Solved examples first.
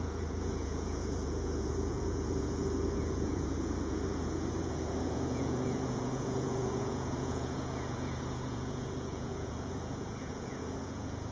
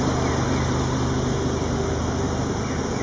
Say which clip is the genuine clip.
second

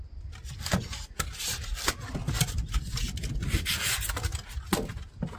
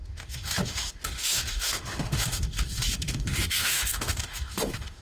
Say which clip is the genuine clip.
first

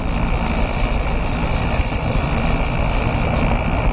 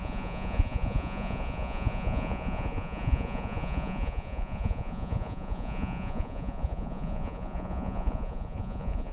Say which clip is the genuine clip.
first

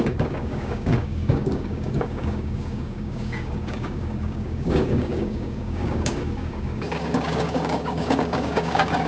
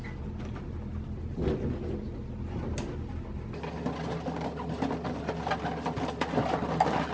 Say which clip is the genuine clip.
second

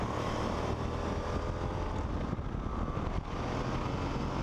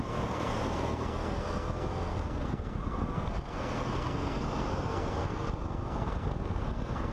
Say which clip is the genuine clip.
first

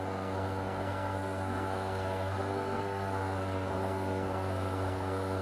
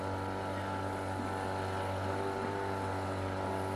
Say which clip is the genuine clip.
second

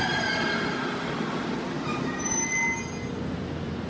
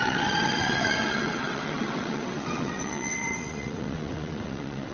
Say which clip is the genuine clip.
first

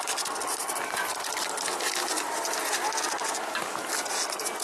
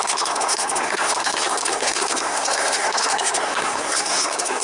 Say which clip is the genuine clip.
first